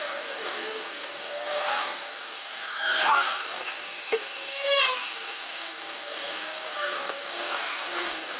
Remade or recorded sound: remade